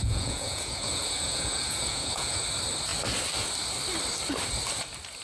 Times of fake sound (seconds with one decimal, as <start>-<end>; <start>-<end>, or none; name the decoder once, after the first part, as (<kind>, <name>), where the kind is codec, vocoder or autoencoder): 0.0-2.4 (vocoder, Vocos)